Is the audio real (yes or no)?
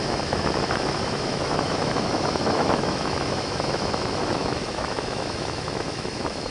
no